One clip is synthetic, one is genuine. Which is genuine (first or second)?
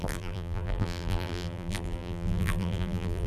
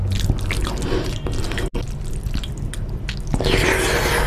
second